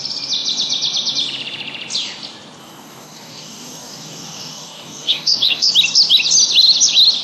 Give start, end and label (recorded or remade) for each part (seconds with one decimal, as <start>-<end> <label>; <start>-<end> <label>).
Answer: 0.0-2.6 recorded; 2.6-5.7 remade; 5.7-7.2 recorded